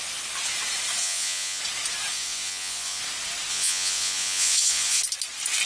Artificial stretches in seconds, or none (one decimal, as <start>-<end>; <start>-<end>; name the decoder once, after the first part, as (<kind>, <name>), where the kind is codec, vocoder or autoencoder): 1.0-1.6 (vocoder, Vocos); 2.1-3.0; 3.5-5.0